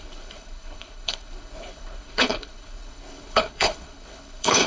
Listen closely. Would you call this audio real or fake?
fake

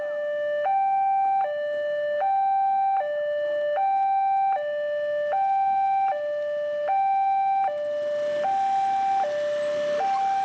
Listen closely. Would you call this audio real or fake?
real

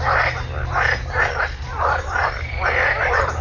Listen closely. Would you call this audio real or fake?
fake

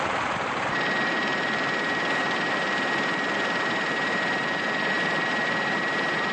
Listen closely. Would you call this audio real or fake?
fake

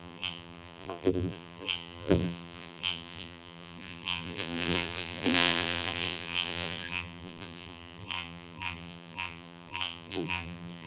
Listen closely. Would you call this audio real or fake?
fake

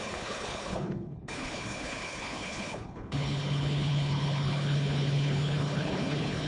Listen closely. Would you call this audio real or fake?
fake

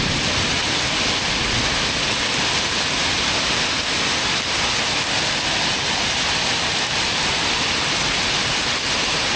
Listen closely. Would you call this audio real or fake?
real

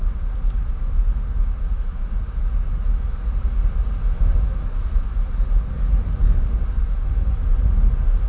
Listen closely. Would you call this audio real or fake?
real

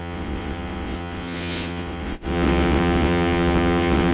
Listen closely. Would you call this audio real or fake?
fake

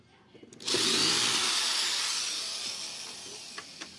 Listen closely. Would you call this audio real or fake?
real